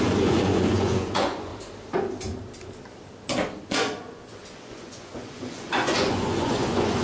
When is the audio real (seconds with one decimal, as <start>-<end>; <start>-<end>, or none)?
1.5-3.6